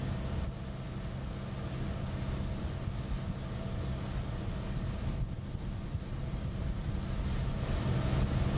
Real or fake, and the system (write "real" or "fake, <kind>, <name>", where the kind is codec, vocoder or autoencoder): real